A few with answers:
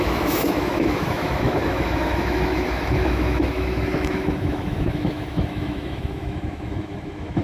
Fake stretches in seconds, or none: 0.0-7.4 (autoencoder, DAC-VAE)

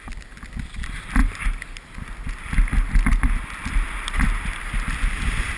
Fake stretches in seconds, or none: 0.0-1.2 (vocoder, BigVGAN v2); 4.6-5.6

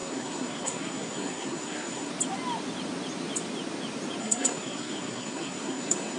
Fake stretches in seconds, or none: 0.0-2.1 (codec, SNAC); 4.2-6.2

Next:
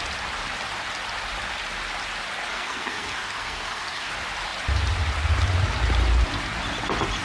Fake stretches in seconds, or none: 2.5-4.1 (codec, SNAC)

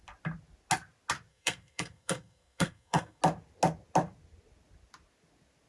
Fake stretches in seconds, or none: 1.3-3.2 (codec, SNAC)

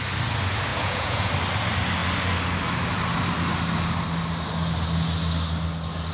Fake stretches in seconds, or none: 0.7-1.3 (vocoder, Vocos)

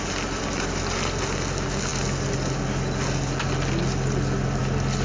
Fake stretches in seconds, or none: none